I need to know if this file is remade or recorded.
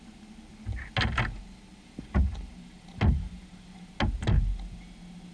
recorded